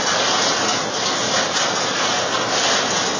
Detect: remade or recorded recorded